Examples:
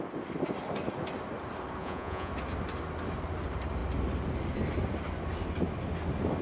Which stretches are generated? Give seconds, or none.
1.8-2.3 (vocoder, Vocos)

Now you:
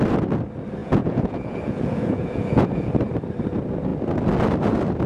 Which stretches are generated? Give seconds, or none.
0.8-2.9 (vocoder, Vocos)

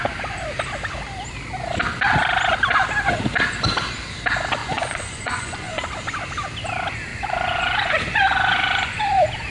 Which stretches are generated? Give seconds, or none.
4.6-5.8 (vocoder, Vocos); 7.1-9.0

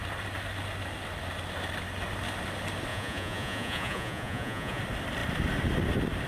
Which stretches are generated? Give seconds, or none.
2.9-4.8 (vocoder, Vocos)

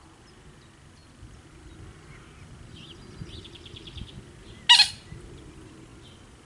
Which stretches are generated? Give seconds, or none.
none

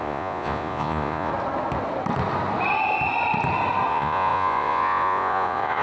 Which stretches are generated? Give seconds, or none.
0.0-1.3 (vocoder, Vocos); 3.9-5.8

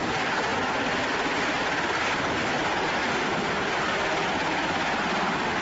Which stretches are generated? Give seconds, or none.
none